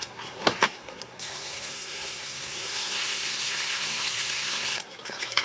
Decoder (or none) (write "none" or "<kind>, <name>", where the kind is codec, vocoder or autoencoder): codec, SNAC